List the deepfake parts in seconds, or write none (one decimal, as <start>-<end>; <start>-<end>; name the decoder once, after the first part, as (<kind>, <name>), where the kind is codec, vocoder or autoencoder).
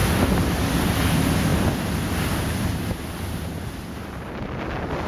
none